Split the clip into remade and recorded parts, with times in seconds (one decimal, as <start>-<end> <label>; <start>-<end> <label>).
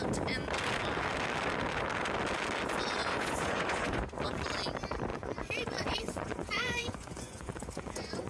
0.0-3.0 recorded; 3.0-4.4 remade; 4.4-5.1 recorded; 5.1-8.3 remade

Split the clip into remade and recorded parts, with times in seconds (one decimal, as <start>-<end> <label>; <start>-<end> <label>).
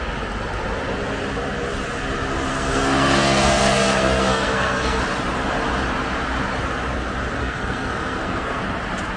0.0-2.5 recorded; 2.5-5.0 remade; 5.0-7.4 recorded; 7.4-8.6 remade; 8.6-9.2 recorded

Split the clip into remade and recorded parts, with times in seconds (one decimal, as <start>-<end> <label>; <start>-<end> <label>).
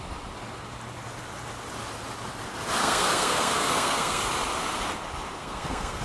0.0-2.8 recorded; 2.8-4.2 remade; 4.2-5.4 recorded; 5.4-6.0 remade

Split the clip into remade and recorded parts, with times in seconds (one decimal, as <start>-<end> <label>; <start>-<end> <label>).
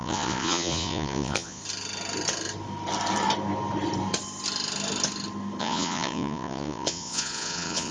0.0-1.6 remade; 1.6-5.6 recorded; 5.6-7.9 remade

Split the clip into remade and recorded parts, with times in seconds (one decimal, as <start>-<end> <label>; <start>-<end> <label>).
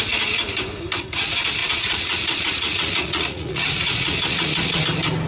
0.0-1.6 recorded; 1.6-4.8 remade; 4.8-5.3 recorded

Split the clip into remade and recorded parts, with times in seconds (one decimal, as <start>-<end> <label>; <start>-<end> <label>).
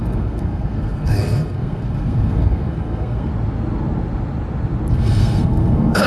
0.0-3.3 remade; 3.3-4.9 recorded; 4.9-6.1 remade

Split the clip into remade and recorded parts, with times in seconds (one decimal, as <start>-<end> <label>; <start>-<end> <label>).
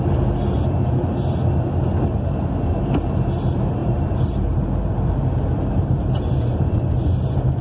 0.0-3.8 recorded; 3.8-4.6 remade; 4.6-5.7 recorded; 5.7-6.7 remade; 6.7-7.6 recorded